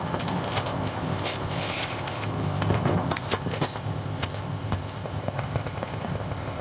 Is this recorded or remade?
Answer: remade